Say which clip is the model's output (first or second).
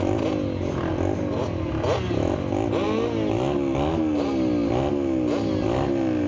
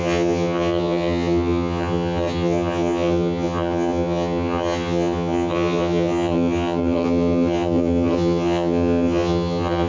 second